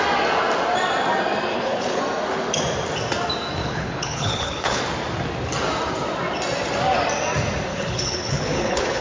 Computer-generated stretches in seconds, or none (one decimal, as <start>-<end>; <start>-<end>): 1.5-2.0; 3.6-4.8; 7.7-9.0